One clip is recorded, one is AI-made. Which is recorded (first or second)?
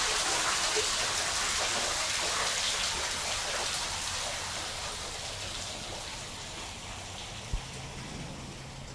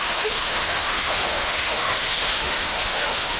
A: first